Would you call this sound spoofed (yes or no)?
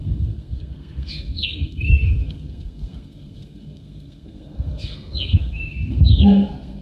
yes